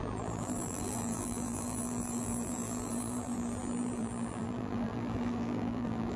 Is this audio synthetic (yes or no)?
yes